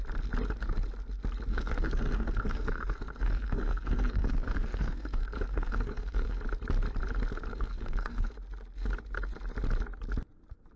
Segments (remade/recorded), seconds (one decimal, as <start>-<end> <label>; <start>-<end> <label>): 0.0-1.5 recorded; 1.5-6.4 remade; 6.4-7.5 recorded; 7.5-8.3 remade; 8.3-10.8 recorded